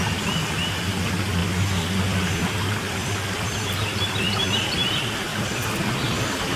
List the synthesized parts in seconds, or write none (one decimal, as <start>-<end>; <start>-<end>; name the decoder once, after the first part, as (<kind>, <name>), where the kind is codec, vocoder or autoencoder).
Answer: 5.3-5.9 (vocoder, BigVGAN v2)